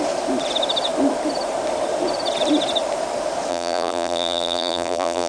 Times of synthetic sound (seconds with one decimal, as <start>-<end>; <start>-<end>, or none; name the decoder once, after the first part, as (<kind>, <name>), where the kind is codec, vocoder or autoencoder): 3.5-5.3 (vocoder, BigVGAN v2)